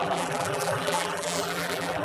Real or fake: fake